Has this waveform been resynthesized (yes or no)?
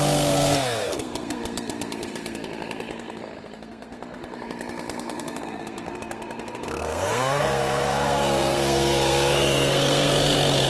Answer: yes